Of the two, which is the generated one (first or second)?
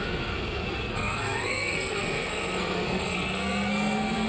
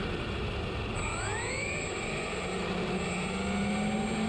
first